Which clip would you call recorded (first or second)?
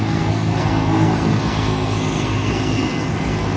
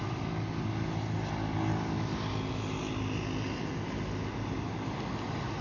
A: second